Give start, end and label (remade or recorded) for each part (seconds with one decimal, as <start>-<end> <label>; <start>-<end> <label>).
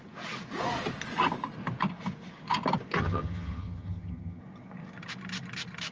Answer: 0.0-3.0 recorded; 3.0-4.4 remade; 4.4-5.9 recorded